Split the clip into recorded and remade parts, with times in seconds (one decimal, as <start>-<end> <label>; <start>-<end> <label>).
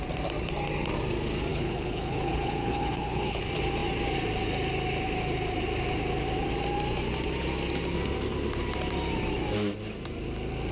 0.0-1.5 recorded; 1.5-3.4 remade; 3.4-10.7 recorded